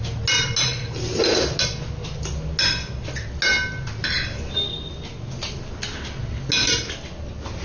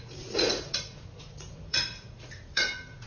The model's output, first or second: second